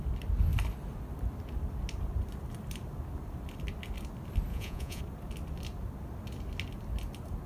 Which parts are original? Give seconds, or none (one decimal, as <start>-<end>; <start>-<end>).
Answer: 0.0-4.5; 5.0-7.5